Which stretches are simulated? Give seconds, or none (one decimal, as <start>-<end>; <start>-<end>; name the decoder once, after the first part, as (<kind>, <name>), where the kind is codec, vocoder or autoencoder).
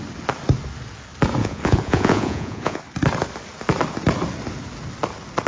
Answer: 1.4-2.8 (vocoder, Vocos)